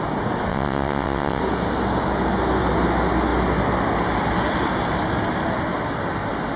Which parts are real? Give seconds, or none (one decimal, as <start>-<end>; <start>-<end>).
0.0-0.5; 1.4-6.6